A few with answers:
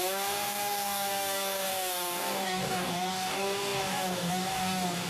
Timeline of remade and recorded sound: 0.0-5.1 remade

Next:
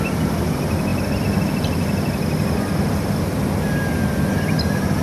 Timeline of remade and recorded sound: 0.0-5.0 recorded

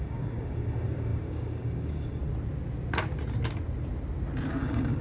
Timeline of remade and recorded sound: 0.0-2.2 remade; 2.2-4.6 recorded; 4.6-5.0 remade

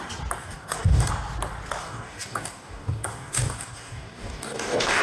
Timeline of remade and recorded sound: 0.0-0.4 recorded; 0.4-1.1 remade; 1.1-1.8 recorded; 1.8-5.0 remade